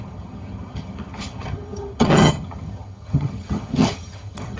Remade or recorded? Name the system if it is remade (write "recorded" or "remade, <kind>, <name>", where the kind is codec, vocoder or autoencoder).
remade, vocoder, HiFi-GAN